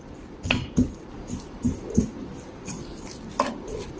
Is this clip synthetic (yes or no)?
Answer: no